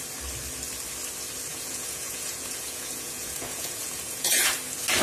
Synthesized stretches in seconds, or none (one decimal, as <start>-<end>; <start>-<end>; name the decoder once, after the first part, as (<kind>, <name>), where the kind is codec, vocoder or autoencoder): 1.5-4.5 (vocoder, Vocos)